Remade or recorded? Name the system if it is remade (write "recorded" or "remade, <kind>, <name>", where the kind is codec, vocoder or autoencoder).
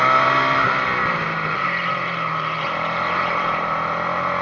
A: recorded